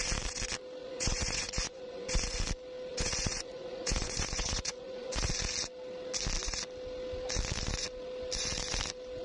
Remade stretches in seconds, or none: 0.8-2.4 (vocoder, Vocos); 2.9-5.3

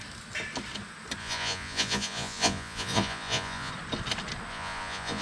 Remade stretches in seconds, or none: 1.2-3.7 (vocoder, Vocos); 4.5-5.2

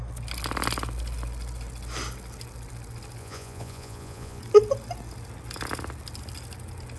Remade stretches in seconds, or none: 3.2-4.4 (vocoder, Vocos)

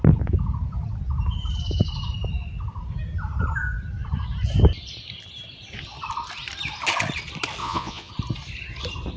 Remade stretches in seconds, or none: 7.6-8.1 (vocoder, Vocos)